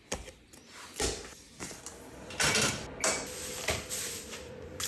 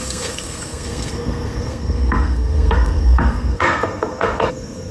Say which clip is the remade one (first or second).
second